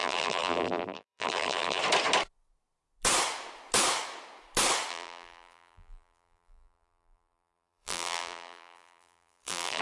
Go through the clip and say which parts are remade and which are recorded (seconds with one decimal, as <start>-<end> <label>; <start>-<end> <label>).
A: 0.0-1.8 remade; 1.8-4.9 recorded; 4.9-9.8 remade